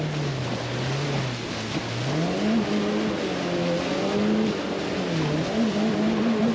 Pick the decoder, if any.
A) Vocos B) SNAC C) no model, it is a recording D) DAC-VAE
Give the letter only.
C